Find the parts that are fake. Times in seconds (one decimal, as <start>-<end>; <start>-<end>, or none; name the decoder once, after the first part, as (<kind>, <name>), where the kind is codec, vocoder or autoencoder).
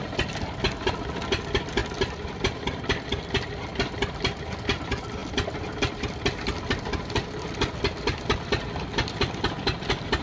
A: none